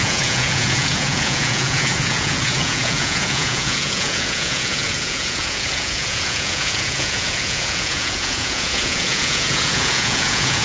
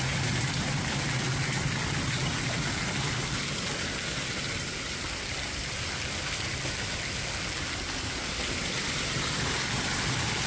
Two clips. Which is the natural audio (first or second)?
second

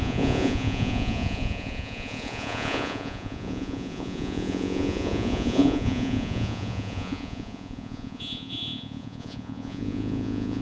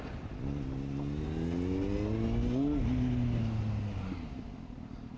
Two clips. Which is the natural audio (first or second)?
second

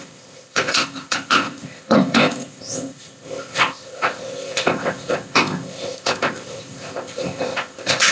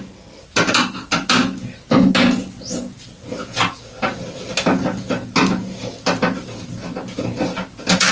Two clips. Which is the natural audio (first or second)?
second